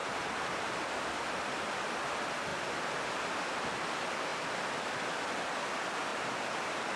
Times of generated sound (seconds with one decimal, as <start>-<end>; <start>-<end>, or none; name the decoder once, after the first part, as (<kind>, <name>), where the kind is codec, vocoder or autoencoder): 0.0-0.8 (vocoder, BigVGAN v2); 6.1-7.0